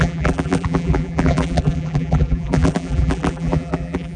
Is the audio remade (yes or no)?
yes